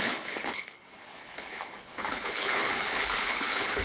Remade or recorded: remade